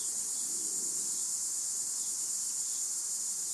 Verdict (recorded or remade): recorded